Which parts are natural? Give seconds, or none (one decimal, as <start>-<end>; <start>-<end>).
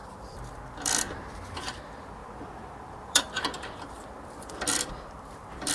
none